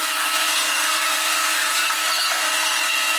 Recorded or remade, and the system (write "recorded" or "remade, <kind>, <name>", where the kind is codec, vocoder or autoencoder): remade, codec, SNAC